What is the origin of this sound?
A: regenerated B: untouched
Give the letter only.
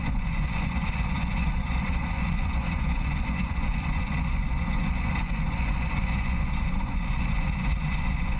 A